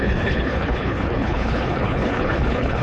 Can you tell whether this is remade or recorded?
remade